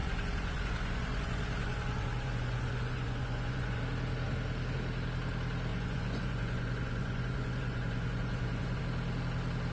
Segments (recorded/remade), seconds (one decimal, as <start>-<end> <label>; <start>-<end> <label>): 0.0-3.8 remade; 3.8-5.7 recorded; 5.7-8.8 remade; 8.8-9.7 recorded